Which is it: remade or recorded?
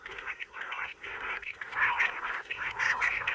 remade